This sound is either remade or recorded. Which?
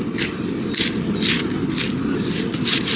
recorded